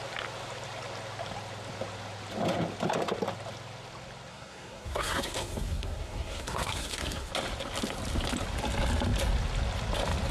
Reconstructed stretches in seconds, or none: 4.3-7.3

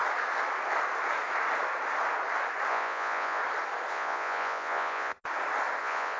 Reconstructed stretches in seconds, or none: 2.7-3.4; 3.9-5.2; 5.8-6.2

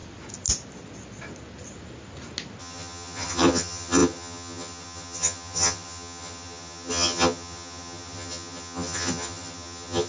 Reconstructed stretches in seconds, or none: 2.6-10.1

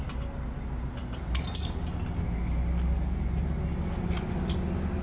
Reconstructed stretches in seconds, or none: none

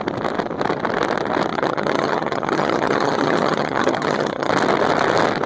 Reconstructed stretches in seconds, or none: 1.5-4.5

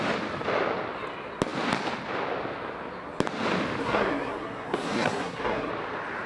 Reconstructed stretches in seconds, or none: 3.8-5.7

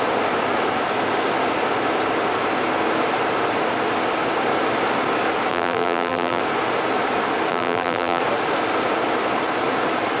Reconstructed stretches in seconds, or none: 5.5-6.4; 7.5-8.2